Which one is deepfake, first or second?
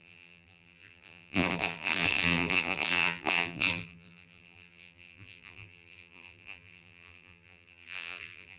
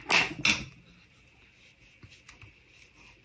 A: first